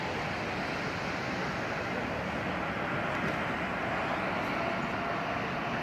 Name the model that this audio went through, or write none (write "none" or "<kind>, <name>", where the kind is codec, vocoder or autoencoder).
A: none